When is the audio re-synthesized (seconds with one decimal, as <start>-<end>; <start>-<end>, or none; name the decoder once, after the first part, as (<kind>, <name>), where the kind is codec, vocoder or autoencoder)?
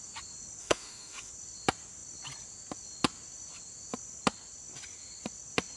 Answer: 0.6-1.3 (autoencoder, DAC-VAE)